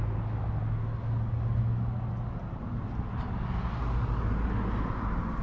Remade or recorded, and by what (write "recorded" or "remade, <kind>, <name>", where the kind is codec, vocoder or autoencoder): recorded